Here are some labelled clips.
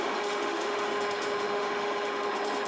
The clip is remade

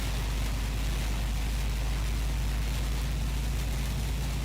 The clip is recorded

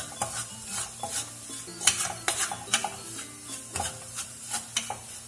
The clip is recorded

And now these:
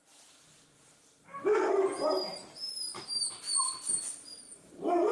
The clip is remade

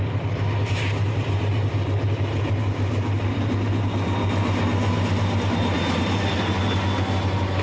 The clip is recorded